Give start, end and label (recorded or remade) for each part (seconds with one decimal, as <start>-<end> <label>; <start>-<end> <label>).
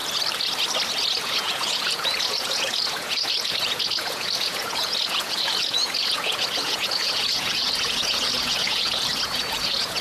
0.0-1.1 recorded; 1.1-10.0 remade